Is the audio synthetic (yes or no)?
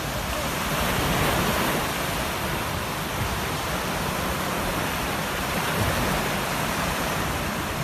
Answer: no